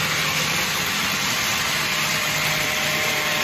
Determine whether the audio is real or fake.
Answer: real